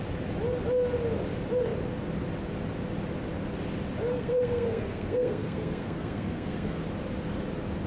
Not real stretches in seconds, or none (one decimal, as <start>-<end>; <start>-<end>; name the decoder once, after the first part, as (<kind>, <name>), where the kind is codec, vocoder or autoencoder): 4.1-6.8 (codec, SNAC)